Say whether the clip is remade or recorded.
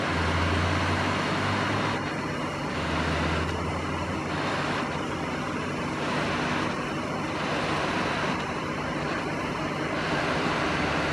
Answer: recorded